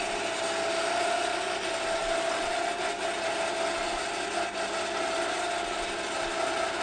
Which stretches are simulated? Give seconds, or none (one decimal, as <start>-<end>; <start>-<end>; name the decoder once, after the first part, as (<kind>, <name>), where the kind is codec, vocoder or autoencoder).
none